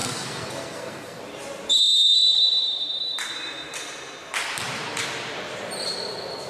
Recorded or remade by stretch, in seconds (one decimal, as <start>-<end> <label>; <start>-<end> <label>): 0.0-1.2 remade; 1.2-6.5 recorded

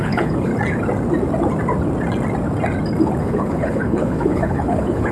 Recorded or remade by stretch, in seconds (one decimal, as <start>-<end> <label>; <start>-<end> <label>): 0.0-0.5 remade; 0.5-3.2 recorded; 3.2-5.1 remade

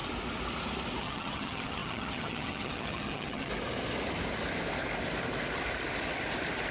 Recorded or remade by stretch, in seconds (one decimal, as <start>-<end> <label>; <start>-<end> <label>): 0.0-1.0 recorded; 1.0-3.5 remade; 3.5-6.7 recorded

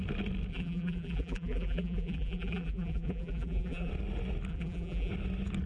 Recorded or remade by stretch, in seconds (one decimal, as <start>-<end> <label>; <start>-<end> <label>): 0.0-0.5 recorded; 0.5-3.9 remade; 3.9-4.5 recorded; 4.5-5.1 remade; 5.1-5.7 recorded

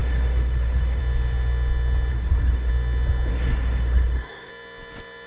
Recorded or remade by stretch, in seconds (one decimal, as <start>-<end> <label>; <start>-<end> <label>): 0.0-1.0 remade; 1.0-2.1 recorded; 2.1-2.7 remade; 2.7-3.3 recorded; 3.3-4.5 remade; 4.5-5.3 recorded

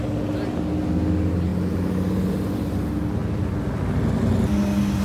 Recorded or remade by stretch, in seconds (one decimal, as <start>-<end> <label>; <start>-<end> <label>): 0.0-5.0 recorded